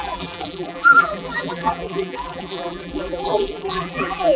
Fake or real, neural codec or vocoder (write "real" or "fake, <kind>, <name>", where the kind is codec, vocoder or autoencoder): fake, vocoder, BigVGAN v2